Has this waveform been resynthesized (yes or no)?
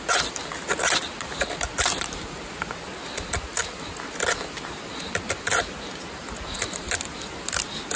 no